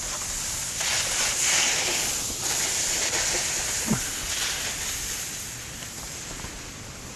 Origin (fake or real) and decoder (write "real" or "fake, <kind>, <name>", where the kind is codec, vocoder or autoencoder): real